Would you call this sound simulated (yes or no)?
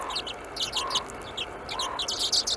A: no